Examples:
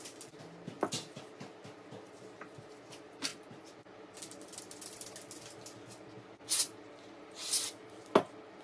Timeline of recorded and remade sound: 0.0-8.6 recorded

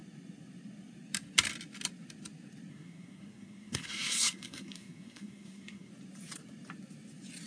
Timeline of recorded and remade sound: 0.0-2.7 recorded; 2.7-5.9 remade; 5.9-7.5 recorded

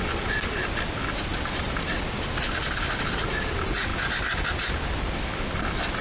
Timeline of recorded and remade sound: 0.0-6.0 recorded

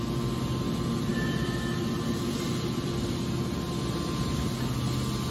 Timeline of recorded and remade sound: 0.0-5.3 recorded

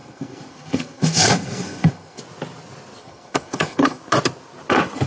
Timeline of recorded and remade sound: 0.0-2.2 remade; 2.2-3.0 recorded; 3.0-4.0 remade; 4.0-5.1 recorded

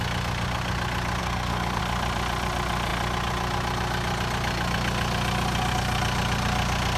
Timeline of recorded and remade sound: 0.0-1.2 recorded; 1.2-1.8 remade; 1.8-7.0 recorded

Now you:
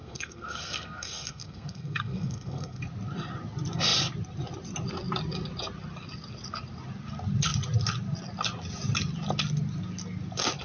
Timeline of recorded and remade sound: 0.0-2.8 remade; 2.8-10.6 recorded

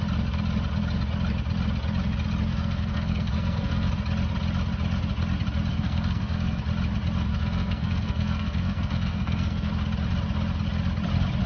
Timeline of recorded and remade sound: 0.0-2.5 recorded; 2.5-3.9 remade; 3.9-5.7 recorded; 5.7-6.6 remade; 6.6-7.3 recorded; 7.3-9.7 remade; 9.7-11.5 recorded